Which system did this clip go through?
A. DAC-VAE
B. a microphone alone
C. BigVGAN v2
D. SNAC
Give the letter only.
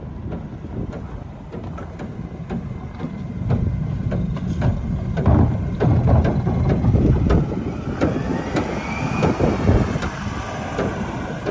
B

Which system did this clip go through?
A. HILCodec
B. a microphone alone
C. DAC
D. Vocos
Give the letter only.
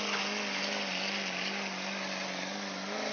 B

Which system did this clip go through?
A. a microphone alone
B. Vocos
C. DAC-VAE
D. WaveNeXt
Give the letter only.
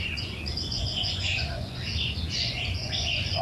B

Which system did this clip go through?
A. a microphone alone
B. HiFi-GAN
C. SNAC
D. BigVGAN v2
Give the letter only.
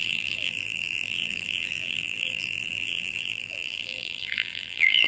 D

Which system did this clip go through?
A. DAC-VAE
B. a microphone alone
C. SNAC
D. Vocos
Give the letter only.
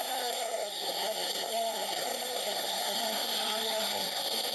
C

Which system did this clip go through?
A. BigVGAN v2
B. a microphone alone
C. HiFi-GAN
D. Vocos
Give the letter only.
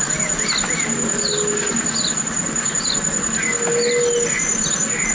B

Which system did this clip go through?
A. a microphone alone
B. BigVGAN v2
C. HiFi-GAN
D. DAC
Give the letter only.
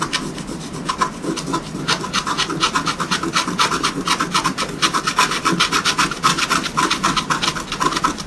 A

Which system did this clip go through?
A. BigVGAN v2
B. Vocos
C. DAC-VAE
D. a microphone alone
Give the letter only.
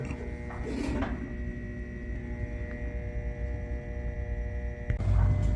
D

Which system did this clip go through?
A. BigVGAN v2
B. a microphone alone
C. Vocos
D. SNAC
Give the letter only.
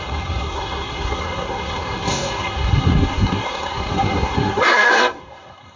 D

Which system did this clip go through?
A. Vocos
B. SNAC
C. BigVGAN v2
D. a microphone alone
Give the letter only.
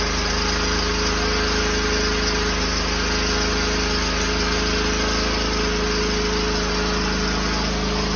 D